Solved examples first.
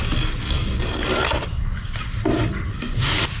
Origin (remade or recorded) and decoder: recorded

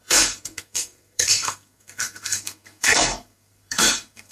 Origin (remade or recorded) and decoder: remade, codec, SNAC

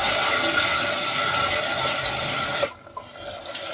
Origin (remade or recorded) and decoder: recorded